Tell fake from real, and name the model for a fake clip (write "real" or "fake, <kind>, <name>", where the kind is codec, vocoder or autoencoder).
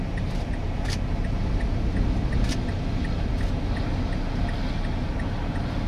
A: real